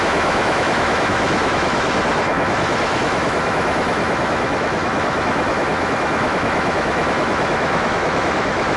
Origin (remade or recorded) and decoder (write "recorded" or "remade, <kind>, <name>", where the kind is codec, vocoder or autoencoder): remade, autoencoder, DAC-VAE